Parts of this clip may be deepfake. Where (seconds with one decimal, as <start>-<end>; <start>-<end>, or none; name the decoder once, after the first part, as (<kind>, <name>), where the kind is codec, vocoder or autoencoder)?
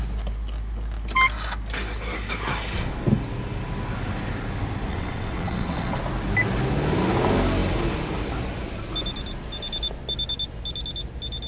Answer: 4.9-6.0 (vocoder, WaveNeXt)